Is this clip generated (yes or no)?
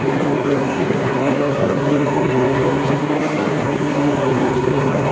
yes